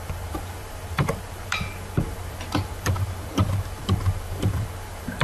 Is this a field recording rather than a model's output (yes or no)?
no